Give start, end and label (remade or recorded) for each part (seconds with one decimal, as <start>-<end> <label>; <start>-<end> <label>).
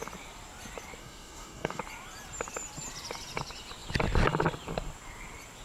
0.0-1.0 recorded; 1.0-1.8 remade; 1.8-5.6 recorded